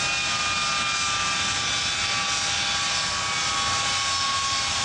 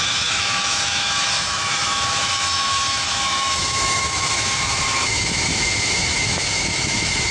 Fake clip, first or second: second